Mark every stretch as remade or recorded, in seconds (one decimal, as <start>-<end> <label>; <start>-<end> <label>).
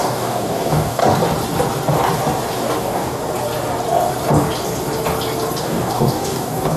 0.0-1.0 remade; 1.0-2.8 recorded; 2.8-3.2 remade; 3.2-5.6 recorded; 5.6-6.8 remade